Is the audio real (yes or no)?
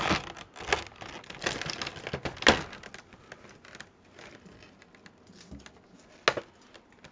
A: yes